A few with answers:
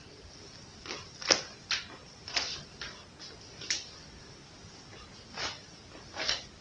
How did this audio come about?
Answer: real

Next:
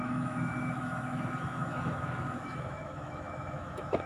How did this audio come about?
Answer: fake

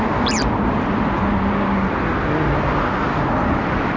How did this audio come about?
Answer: real